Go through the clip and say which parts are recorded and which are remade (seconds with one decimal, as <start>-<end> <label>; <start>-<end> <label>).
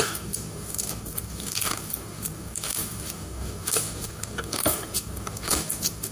0.0-6.1 remade